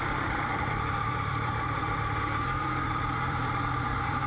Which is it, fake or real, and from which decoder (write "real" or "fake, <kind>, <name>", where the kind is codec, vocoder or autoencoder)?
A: fake, vocoder, BigVGAN v2